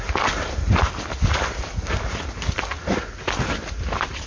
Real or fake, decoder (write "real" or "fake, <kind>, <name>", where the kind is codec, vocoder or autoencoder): real